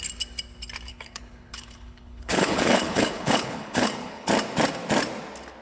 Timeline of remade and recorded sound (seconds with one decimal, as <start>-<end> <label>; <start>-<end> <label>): 0.0-0.9 recorded; 0.9-4.3 remade; 4.3-5.6 recorded